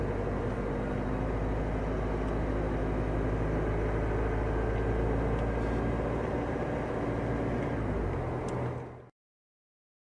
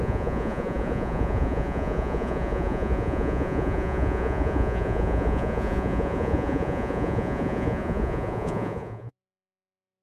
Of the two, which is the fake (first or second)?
second